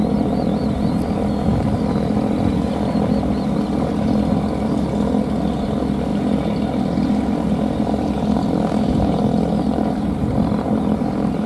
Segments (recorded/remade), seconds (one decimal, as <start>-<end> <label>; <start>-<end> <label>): 0.0-6.1 recorded; 6.1-9.2 remade; 9.2-9.8 recorded; 9.8-11.5 remade